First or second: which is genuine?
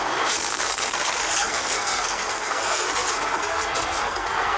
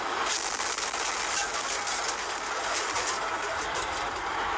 second